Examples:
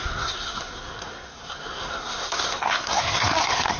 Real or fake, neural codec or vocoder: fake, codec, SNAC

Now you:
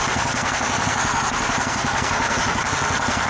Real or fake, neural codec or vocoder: fake, codec, SNAC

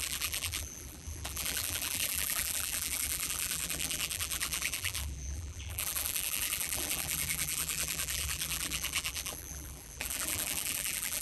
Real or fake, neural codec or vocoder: fake, vocoder, BigVGAN v2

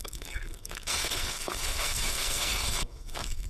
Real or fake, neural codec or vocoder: fake, codec, SNAC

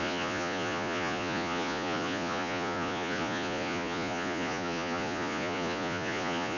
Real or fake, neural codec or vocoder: fake, vocoder, Vocos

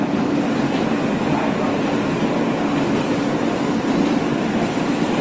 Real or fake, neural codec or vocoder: real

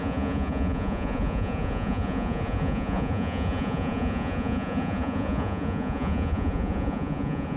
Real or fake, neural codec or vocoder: fake, vocoder, Vocos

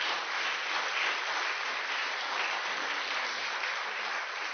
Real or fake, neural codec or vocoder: real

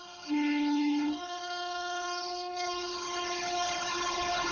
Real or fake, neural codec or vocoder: fake, codec, HILCodec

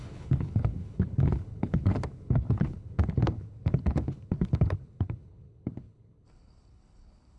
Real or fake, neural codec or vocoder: fake, codec, HILCodec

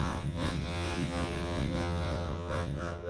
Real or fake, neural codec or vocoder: fake, vocoder, WaveNeXt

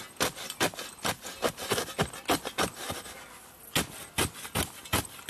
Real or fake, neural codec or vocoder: real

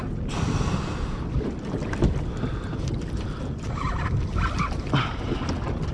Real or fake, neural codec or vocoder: real